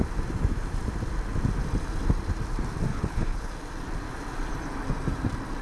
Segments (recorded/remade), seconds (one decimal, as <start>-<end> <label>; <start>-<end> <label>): 0.0-2.9 recorded; 2.9-3.5 remade; 3.5-5.6 recorded